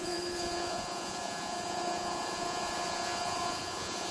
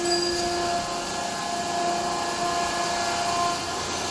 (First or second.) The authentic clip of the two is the second